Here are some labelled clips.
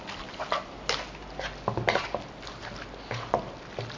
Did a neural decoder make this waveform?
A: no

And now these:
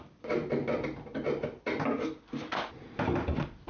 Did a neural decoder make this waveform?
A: no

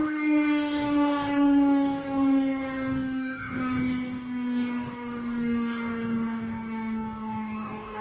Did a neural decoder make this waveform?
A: yes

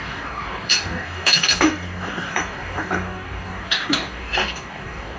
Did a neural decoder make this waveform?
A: yes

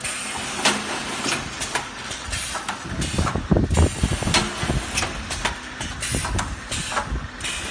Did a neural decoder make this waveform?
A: no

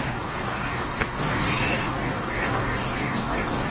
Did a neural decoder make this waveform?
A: yes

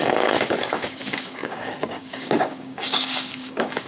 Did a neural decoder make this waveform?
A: yes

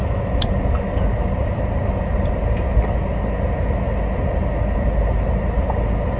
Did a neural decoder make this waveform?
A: no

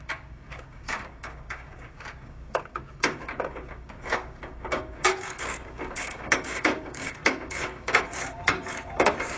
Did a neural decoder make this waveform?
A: yes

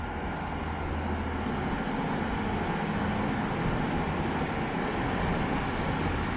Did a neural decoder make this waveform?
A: no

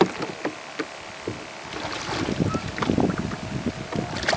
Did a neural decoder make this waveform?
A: no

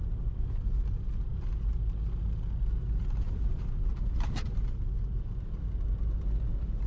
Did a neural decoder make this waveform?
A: no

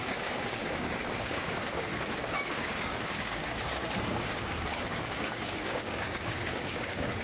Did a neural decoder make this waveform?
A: yes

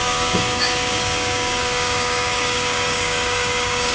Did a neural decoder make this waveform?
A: yes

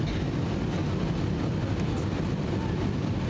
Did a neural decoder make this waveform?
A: no